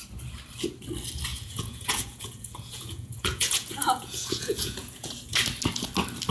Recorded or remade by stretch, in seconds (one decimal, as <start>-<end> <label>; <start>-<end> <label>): 0.0-1.3 recorded; 1.3-5.1 remade; 5.1-6.3 recorded